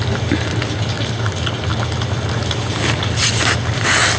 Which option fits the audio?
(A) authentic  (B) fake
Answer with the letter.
A